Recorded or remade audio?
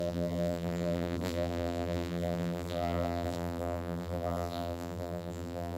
remade